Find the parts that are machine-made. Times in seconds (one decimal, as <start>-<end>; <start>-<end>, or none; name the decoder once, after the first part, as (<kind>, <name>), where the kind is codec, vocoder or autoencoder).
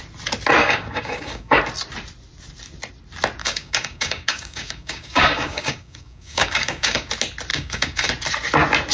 0.6-1.6 (codec, DAC); 3.4-7.1; 7.5-8.1